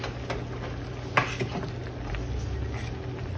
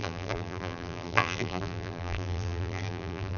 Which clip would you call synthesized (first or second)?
second